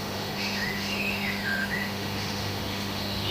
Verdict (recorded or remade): remade